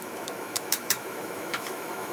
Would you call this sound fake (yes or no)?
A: yes